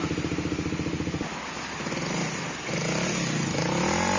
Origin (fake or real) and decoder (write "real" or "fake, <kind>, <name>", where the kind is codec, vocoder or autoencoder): real